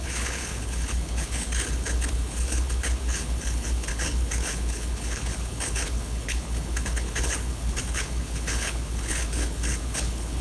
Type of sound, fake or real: fake